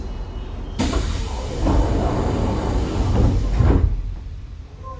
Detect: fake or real real